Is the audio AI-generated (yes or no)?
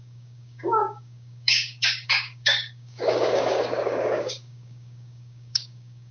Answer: yes